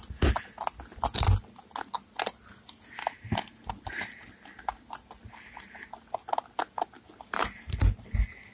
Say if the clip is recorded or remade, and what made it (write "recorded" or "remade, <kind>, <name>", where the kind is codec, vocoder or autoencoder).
recorded